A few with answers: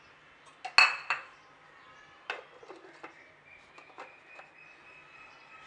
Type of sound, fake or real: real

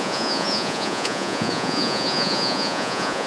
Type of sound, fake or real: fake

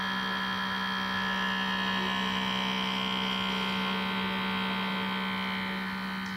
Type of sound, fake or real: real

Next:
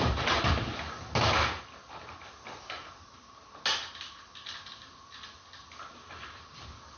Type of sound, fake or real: real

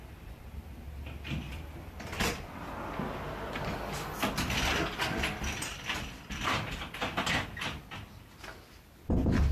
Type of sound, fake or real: real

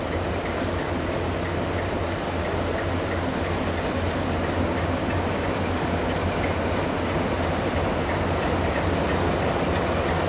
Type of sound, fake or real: real